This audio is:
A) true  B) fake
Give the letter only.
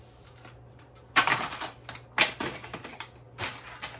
A